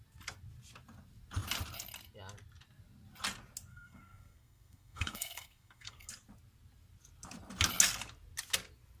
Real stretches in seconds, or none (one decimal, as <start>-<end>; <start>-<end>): 0.0-3.7; 6.1-9.0